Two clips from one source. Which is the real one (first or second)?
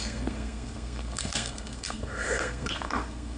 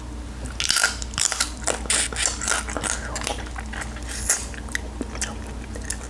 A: second